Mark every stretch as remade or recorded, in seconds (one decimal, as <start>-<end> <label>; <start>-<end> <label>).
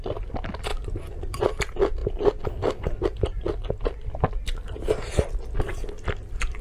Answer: 0.0-0.7 recorded; 0.7-1.6 remade; 1.6-6.6 recorded